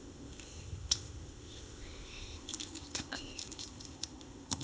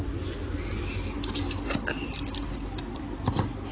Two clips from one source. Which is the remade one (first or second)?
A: first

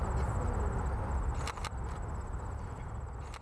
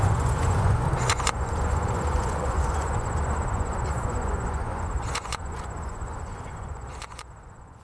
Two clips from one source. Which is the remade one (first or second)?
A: second